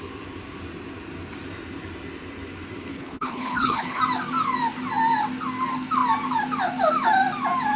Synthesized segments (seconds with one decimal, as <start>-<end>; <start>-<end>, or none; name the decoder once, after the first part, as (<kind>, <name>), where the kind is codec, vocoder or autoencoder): 2.9-4.0 (codec, HILCodec)